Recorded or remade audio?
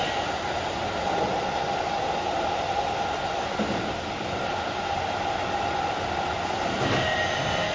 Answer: recorded